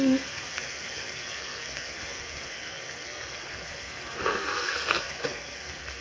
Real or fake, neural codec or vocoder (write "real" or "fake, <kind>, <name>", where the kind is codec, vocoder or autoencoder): fake, codec, SNAC